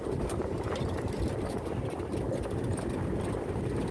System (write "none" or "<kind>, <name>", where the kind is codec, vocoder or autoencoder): none